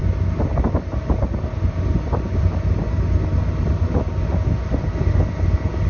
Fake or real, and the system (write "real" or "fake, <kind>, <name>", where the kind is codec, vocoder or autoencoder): real